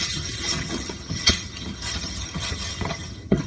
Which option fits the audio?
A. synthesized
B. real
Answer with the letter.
A